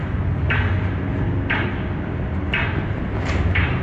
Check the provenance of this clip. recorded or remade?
recorded